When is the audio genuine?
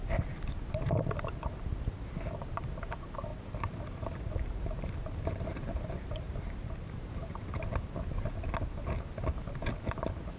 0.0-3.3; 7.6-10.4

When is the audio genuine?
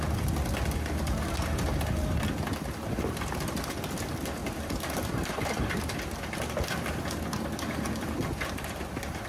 0.0-4.4; 7.0-9.3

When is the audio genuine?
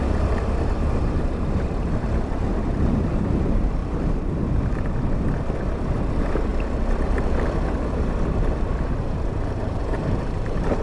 3.8-5.6; 6.5-9.1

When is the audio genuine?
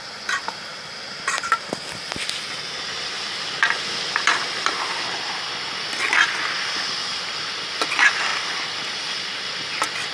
0.0-0.7; 5.3-10.1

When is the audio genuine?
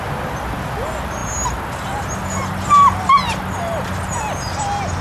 0.0-5.0